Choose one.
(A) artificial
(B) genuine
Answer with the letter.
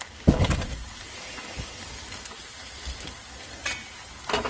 B